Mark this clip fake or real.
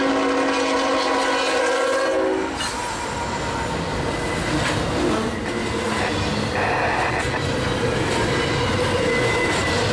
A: real